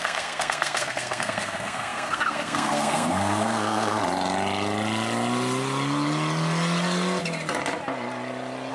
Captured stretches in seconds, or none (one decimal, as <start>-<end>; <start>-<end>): 4.0-8.7

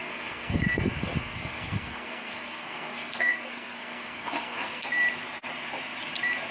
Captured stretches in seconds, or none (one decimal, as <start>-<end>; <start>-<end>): 4.9-6.5

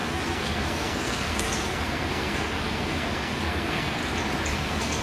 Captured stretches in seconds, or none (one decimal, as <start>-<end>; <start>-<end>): 4.0-4.5

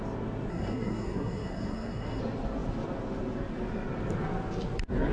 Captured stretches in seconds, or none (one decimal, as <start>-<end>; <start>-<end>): 0.0-0.5; 2.2-5.1

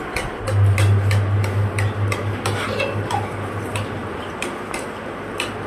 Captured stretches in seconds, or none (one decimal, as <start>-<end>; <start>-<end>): 0.0-5.7

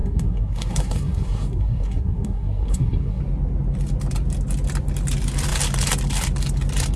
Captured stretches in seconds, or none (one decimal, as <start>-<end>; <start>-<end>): 3.2-7.0

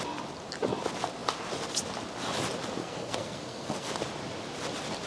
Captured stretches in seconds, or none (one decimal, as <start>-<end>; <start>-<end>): 0.0-2.8; 3.9-5.1

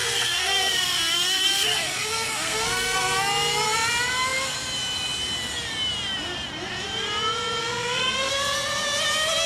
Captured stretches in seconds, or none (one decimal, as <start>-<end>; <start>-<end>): 3.0-7.6; 8.3-9.5